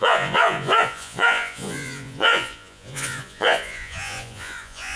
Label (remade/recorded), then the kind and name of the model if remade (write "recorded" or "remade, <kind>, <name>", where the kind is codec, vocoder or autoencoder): remade, vocoder, Vocos